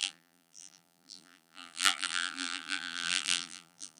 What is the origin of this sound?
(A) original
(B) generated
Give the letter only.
B